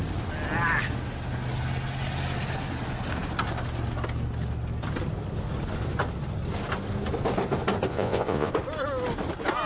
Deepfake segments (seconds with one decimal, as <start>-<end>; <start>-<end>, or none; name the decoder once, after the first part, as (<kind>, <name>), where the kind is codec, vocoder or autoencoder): 7.9-8.5 (vocoder, Vocos)